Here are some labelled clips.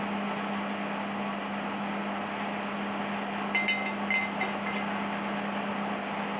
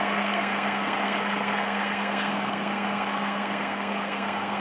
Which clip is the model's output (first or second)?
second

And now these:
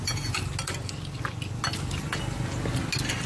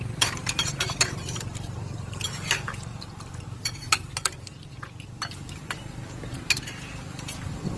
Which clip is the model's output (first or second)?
second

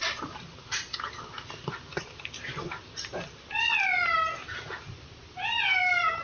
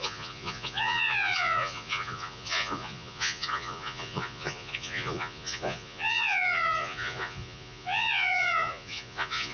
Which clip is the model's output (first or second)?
second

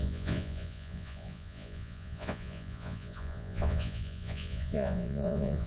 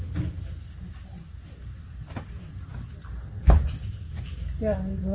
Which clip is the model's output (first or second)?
first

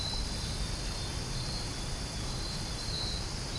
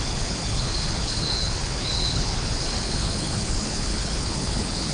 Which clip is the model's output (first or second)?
second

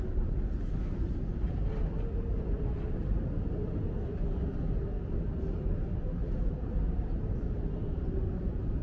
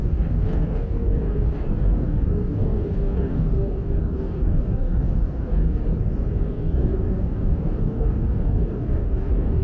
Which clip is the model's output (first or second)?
second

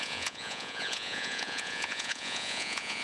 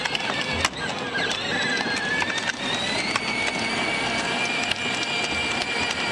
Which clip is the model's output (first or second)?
first